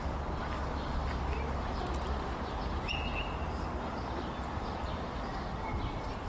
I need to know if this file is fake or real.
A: real